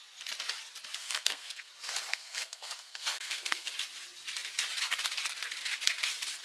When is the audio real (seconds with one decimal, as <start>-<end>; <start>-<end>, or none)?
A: 0.0-1.0; 1.7-2.1; 3.7-6.4